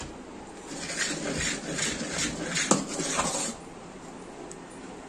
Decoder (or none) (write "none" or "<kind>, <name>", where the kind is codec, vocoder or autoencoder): none